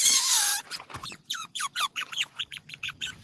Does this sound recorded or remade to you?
remade